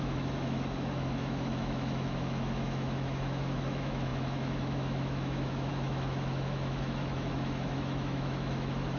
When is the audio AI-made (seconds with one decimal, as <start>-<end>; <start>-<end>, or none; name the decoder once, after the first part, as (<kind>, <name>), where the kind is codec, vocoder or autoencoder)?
0.0-9.0 (autoencoder, DAC-VAE)